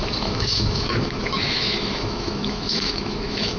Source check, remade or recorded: remade